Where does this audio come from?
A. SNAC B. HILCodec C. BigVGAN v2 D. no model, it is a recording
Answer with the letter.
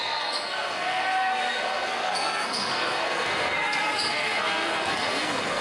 A